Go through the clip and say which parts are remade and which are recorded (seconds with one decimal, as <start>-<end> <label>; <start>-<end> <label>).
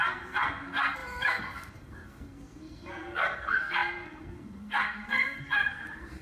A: 0.0-6.2 remade